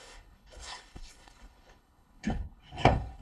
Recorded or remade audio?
remade